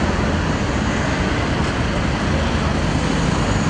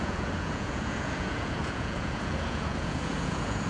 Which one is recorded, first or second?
first